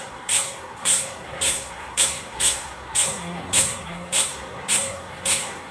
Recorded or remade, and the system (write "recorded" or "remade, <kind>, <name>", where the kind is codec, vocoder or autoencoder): remade, codec, SNAC